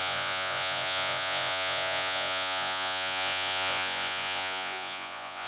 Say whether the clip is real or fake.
fake